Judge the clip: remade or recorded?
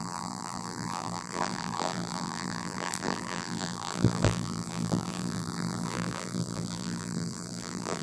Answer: remade